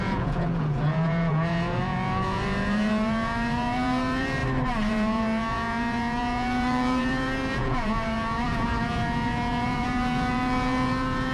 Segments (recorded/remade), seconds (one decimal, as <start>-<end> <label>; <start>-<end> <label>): 0.0-4.4 remade; 4.4-4.9 recorded; 4.9-11.3 remade